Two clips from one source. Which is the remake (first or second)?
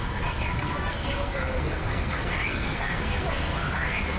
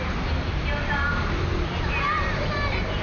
first